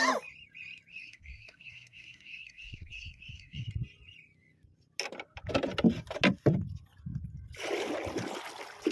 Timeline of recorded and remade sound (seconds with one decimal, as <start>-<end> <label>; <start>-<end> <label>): 0.0-0.9 recorded; 0.9-3.7 remade; 3.7-8.9 recorded